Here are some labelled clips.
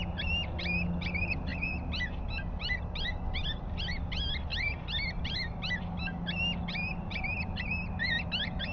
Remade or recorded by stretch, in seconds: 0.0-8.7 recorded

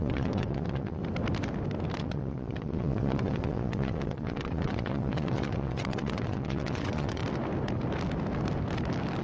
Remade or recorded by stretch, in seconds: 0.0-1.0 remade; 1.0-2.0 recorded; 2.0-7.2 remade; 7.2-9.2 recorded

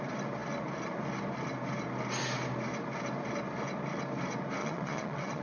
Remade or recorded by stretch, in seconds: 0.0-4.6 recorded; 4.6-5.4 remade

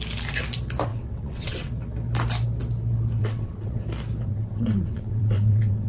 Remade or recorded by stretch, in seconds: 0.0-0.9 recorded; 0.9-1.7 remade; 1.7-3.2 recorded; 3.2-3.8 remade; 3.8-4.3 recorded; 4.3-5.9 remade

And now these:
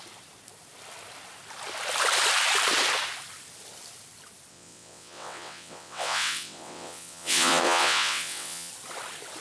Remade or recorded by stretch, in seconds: 0.0-4.5 recorded; 4.5-8.7 remade; 8.7-9.4 recorded

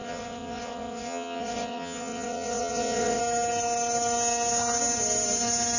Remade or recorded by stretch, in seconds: 0.0-3.2 remade; 3.2-5.8 recorded

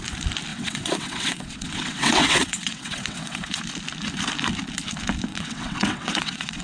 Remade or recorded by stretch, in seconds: 0.0-0.5 recorded; 0.5-3.6 remade; 3.6-5.3 recorded; 5.3-6.6 remade

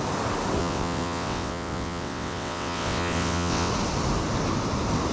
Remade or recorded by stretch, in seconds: 0.0-0.6 recorded; 0.6-3.7 remade; 3.7-5.1 recorded